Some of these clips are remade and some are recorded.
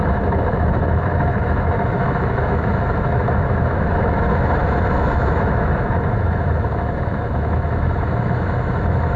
remade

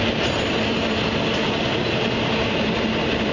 recorded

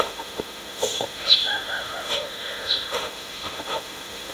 remade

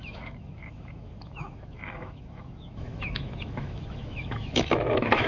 remade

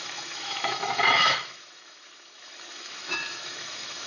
remade